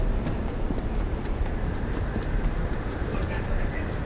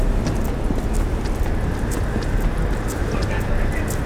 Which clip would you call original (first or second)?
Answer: second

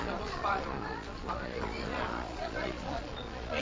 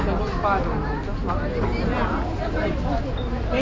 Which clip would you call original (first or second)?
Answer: second